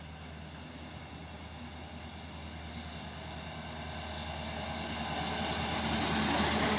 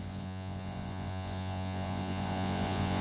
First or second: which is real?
first